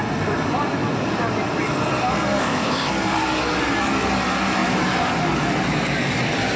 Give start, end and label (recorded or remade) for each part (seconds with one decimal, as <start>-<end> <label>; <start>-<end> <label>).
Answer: 0.0-2.4 recorded; 2.4-2.9 remade; 2.9-6.6 recorded